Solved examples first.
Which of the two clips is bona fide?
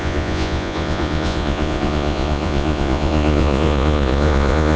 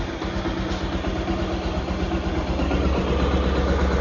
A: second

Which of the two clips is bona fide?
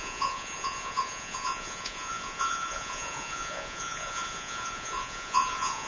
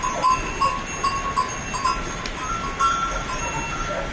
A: second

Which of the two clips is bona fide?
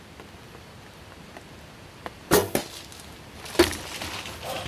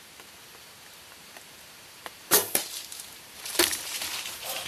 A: first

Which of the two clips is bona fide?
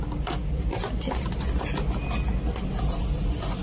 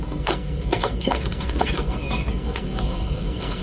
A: first